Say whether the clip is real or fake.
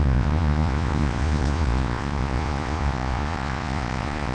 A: fake